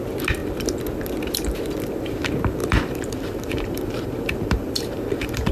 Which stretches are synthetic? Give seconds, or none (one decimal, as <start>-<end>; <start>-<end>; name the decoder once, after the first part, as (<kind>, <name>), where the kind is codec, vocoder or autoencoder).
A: 2.6-5.5 (vocoder, BigVGAN v2)